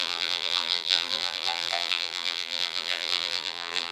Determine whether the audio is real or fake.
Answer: fake